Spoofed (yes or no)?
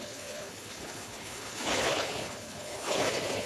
yes